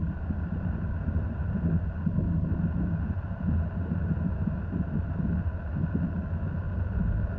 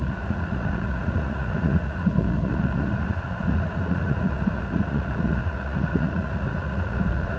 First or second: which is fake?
second